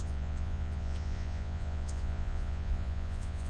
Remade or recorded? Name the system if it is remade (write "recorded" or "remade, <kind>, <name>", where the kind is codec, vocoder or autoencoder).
remade, vocoder, Vocos